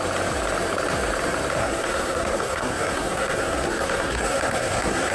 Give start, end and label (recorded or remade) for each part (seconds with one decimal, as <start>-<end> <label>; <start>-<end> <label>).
0.0-1.6 recorded; 1.6-5.1 remade